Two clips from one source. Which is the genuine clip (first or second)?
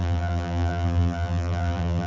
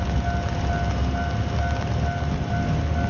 second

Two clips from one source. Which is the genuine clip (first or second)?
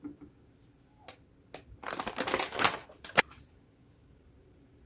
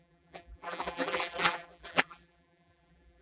first